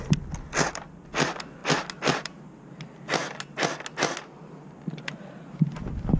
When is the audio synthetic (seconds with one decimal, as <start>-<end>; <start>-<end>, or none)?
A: none